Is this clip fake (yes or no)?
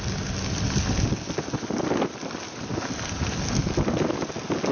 no